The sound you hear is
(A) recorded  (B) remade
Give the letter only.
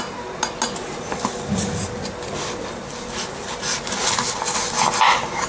A